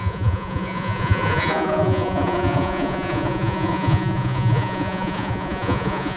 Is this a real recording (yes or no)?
no